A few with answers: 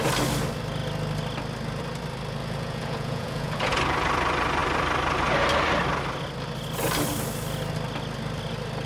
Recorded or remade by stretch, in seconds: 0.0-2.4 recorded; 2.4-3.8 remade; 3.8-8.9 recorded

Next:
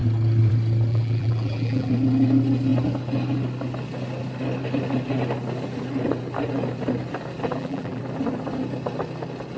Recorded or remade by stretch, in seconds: 0.0-0.9 recorded; 0.9-1.9 remade; 1.9-7.5 recorded; 7.5-8.0 remade; 8.0-9.6 recorded

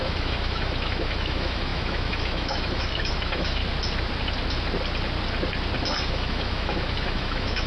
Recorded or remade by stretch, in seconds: 0.0-3.6 remade; 3.6-6.1 recorded; 6.1-7.7 remade

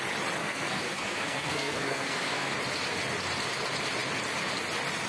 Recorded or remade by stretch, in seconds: 0.0-0.4 recorded; 0.4-2.5 remade; 2.5-5.1 recorded

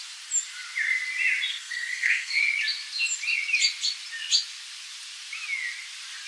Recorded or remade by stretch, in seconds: 0.0-1.5 recorded; 1.5-2.4 remade; 2.4-6.3 recorded

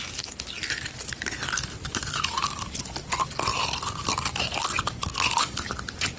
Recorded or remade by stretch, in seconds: 0.0-3.5 recorded; 3.5-4.1 remade; 4.1-6.2 recorded